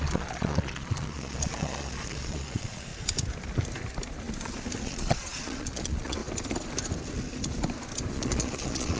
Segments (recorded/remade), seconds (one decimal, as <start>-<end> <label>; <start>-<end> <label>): 0.0-2.9 remade; 2.9-4.8 recorded; 4.8-6.2 remade; 6.2-8.1 recorded; 8.1-9.0 remade